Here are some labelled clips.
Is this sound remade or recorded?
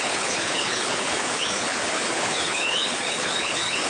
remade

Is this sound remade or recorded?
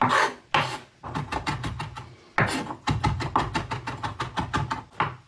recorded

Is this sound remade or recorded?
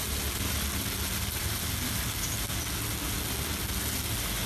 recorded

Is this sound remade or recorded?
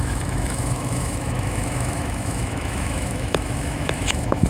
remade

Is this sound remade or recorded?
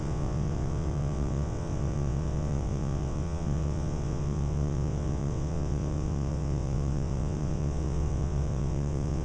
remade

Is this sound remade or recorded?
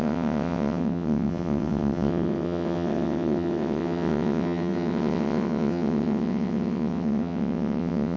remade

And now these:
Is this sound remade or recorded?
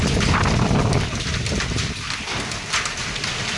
recorded